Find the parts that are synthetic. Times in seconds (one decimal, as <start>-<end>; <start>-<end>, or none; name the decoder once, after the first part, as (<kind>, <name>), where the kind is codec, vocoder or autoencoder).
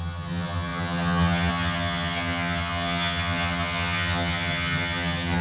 0.0-5.4 (vocoder, HiFi-GAN)